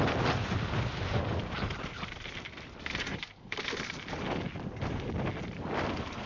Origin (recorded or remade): recorded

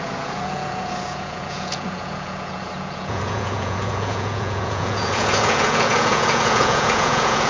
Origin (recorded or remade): remade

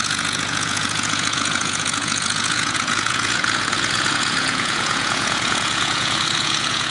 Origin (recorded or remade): remade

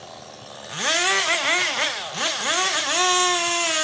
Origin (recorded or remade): recorded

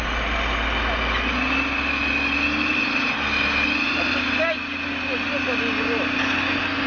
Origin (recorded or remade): recorded